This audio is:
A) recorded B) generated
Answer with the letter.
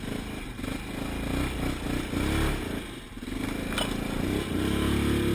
A